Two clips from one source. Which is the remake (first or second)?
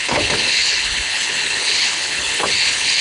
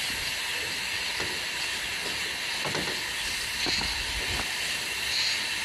first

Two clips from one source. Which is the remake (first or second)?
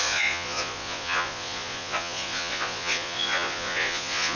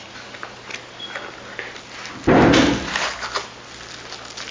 first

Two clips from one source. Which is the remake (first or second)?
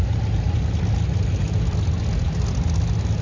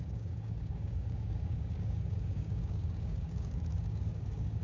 second